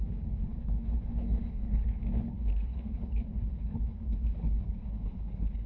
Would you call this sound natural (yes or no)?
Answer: no